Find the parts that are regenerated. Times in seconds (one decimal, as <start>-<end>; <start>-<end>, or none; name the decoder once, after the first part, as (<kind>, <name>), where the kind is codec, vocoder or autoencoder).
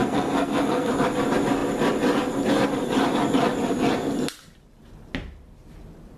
0.0-0.9 (codec, SNAC)